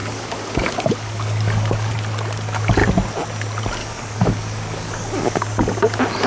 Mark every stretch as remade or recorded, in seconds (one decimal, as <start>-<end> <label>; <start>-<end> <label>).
0.0-1.9 remade; 1.9-3.8 recorded; 3.8-5.4 remade; 5.4-6.3 recorded